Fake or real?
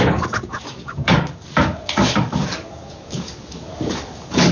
fake